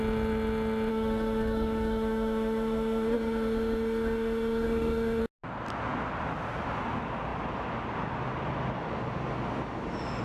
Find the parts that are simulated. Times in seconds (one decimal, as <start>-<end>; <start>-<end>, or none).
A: 0.9-5.2